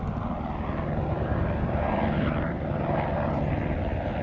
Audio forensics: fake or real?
real